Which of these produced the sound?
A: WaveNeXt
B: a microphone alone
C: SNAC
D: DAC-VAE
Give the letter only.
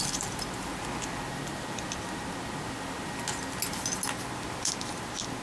B